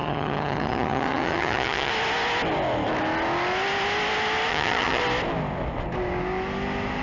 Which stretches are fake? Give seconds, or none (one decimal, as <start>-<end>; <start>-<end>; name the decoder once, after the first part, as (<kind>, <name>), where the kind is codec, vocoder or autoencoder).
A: 0.0-1.9 (vocoder, HiFi-GAN); 4.5-5.0